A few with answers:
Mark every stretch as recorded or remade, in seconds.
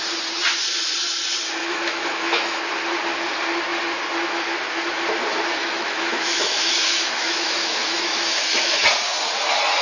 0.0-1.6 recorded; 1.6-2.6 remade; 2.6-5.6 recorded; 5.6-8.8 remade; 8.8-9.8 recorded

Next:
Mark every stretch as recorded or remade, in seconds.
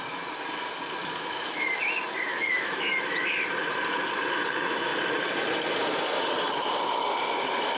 0.0-1.0 recorded; 1.0-1.6 remade; 1.6-2.3 recorded; 2.3-3.0 remade; 3.0-7.8 recorded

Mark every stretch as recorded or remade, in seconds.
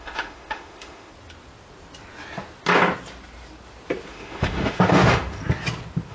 0.0-1.1 remade; 1.1-4.1 recorded; 4.1-5.4 remade; 5.4-6.1 recorded